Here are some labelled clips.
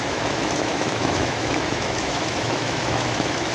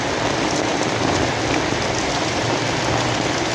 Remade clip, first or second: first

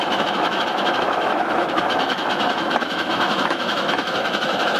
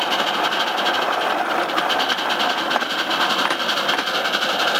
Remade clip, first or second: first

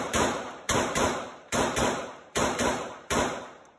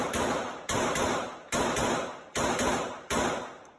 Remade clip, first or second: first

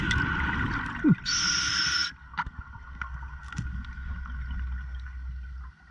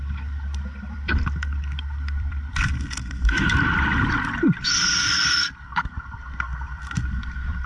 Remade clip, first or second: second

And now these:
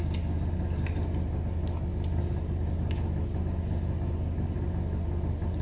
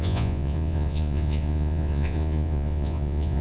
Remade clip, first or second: second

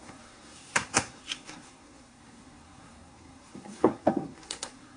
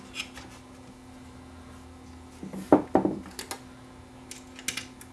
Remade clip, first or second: first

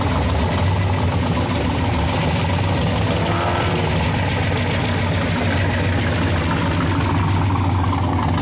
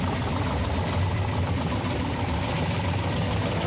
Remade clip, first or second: second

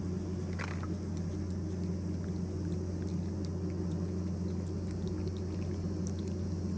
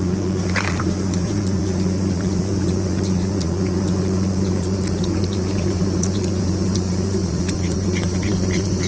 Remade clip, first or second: second